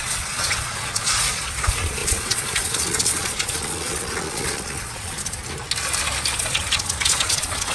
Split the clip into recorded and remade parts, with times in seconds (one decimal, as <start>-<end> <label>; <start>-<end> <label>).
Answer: 0.0-5.4 remade; 5.4-6.4 recorded; 6.4-7.7 remade